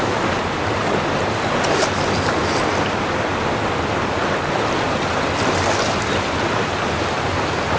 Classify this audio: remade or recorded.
recorded